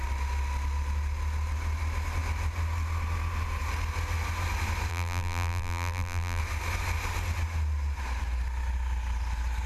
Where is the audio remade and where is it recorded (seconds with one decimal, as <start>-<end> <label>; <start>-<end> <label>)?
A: 0.0-4.9 recorded; 4.9-6.4 remade; 6.4-9.7 recorded